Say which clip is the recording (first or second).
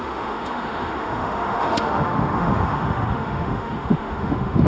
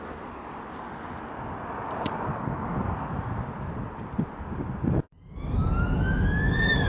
second